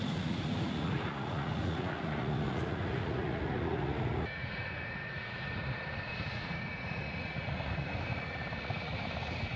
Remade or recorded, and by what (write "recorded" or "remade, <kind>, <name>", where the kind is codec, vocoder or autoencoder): remade, vocoder, Vocos